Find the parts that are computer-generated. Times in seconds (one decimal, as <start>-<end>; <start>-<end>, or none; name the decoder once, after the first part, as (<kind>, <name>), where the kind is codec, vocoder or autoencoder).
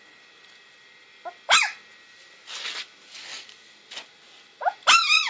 none